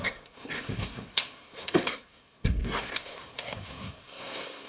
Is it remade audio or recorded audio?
remade